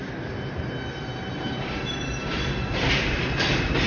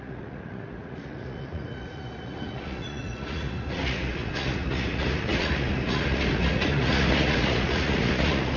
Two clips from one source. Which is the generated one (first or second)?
second